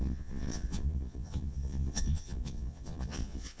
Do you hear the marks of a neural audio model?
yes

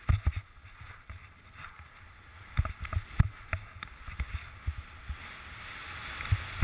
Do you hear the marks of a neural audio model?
no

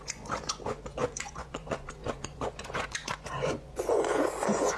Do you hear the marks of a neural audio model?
yes